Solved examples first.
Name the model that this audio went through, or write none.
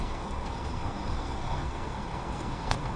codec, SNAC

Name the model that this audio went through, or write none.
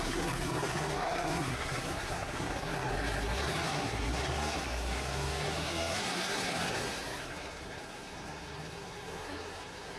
codec, SNAC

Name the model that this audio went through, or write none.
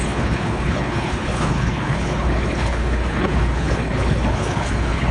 codec, HILCodec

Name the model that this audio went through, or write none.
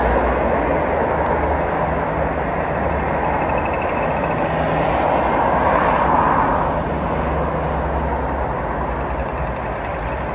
none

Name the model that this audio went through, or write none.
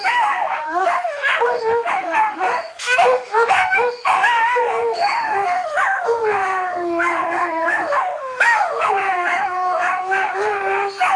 autoencoder, DAC-VAE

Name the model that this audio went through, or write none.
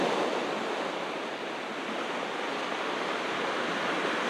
none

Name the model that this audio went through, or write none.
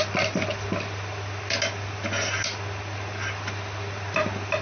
none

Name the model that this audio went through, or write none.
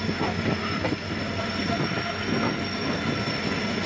none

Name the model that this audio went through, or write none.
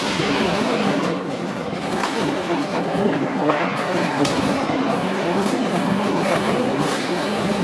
codec, SNAC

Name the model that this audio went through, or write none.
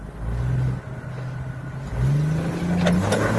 none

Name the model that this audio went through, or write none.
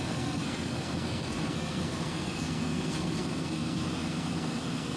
codec, SNAC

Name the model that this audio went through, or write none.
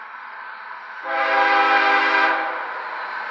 none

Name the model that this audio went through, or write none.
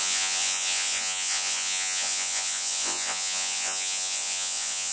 vocoder, Vocos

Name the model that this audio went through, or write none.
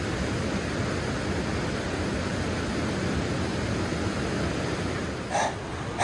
none